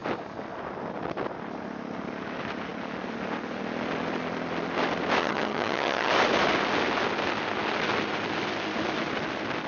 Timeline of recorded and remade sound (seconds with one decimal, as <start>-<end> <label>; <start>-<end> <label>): 0.0-5.2 recorded; 5.2-6.1 remade; 6.1-9.7 recorded